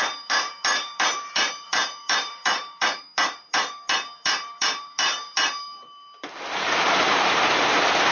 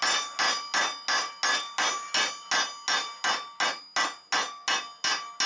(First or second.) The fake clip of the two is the first